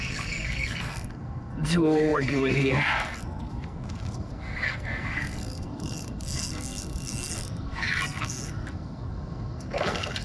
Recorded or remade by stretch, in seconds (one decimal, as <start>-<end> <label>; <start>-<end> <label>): 0.0-10.2 remade